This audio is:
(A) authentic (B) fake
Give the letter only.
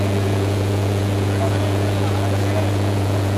B